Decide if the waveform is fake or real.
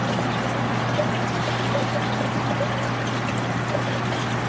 real